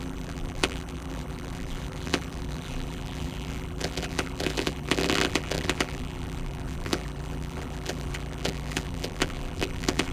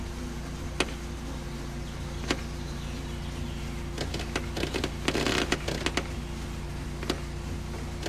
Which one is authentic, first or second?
second